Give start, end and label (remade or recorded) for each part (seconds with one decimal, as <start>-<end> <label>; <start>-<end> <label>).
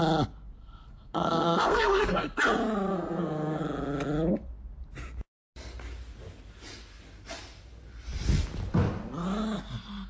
0.0-0.6 recorded; 0.6-2.4 remade; 2.4-2.9 recorded; 2.9-3.6 remade; 3.6-10.1 recorded